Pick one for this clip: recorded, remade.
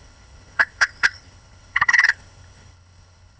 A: remade